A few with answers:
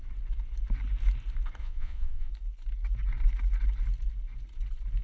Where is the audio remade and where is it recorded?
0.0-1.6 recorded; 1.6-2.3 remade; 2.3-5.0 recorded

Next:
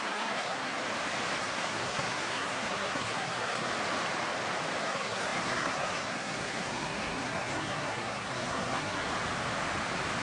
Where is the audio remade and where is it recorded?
0.0-0.8 remade; 0.8-1.4 recorded; 1.4-3.7 remade; 3.7-4.8 recorded; 4.8-9.1 remade; 9.1-10.2 recorded

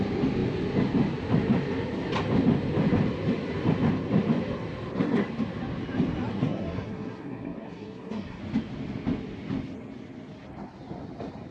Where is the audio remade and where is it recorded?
0.0-6.3 recorded; 6.3-8.4 remade; 8.4-11.5 recorded

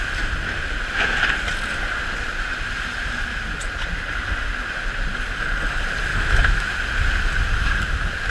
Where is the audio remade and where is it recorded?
0.0-6.1 recorded; 6.1-6.7 remade; 6.7-8.3 recorded

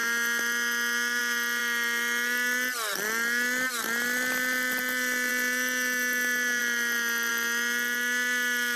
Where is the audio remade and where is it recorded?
0.0-8.8 recorded

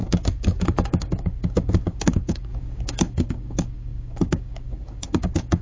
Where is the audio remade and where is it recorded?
0.0-5.6 remade

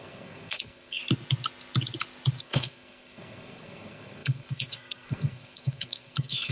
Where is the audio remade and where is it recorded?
0.0-1.0 remade; 1.0-2.4 recorded; 2.4-6.5 remade